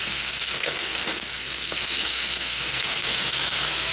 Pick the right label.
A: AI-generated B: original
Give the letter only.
A